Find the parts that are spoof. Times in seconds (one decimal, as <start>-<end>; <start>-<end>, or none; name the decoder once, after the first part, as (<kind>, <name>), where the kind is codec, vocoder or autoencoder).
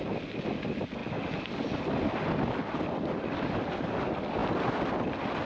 none